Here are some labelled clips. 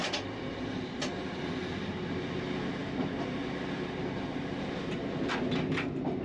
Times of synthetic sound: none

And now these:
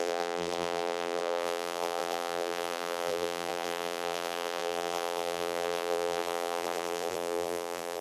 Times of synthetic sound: 0.0-8.0 (vocoder, BigVGAN v2)

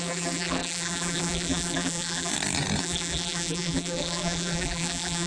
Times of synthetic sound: 0.0-2.3 (vocoder, BigVGAN v2); 2.8-5.3